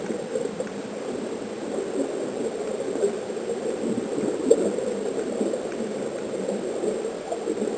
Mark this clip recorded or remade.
recorded